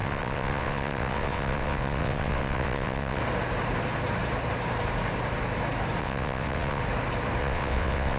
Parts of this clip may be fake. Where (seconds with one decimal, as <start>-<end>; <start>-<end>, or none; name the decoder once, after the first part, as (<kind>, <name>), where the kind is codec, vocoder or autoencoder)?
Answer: 0.0-3.2 (vocoder, WaveNeXt); 6.0-6.8; 7.4-8.2